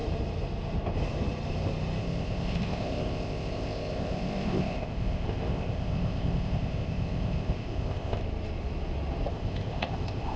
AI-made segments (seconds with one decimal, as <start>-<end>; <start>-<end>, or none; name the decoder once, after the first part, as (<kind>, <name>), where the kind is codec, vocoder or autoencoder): 2.0-8.2 (codec, ZipCodec); 9.3-10.4